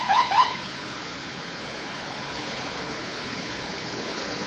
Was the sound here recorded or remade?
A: remade